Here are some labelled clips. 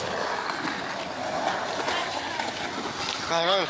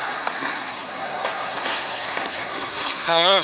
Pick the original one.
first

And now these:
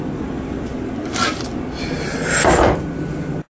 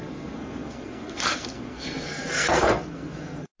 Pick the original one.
first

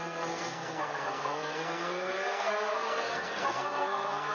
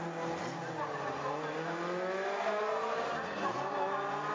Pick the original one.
second